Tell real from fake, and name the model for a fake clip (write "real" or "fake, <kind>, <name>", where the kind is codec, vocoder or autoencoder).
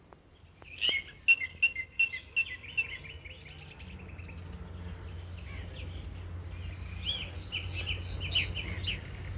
real